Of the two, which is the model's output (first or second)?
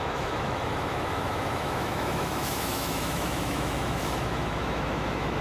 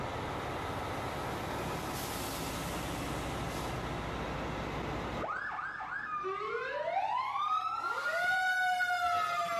first